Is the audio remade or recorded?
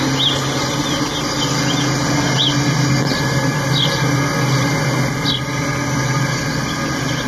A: recorded